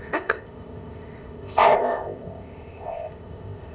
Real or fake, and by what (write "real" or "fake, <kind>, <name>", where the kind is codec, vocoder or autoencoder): fake, codec, ZipCodec